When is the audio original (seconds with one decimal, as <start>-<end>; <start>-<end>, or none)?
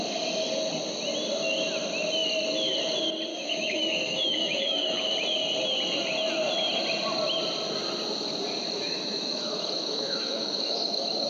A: 0.0-3.3; 5.1-8.6